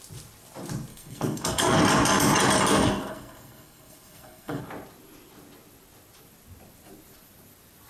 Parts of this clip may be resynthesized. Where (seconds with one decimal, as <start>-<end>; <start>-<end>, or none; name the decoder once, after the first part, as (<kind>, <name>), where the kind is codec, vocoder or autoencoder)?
0.9-1.8 (codec, SNAC); 2.7-4.6